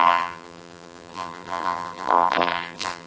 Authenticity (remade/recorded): remade